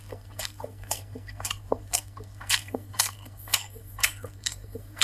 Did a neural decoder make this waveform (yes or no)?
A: yes